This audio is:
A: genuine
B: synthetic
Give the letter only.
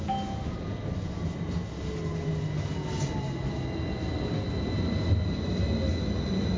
A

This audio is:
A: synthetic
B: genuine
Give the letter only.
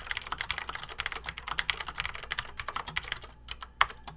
B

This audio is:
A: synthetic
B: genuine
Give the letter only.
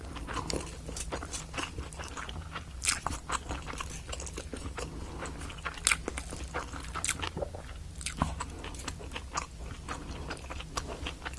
B